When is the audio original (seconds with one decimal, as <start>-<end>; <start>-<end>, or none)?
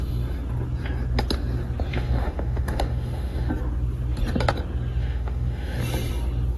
0.0-1.9; 3.5-5.0; 5.8-6.6